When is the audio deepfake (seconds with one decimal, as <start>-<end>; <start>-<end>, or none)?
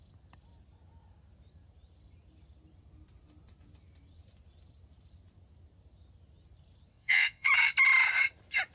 6.9-7.5